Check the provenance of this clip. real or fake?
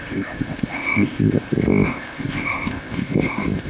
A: fake